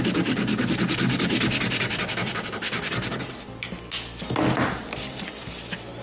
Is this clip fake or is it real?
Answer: real